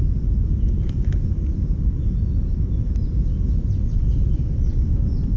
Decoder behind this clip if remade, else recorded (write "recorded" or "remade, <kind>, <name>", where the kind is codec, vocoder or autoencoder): recorded